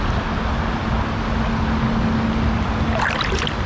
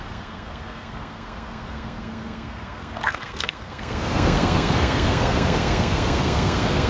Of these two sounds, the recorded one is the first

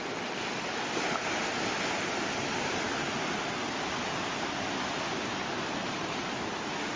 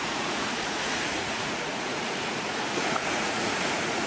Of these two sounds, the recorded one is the first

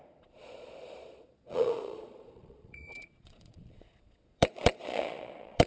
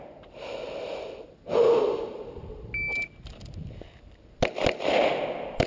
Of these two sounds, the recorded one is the second